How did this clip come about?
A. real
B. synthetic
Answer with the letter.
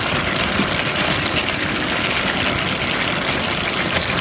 A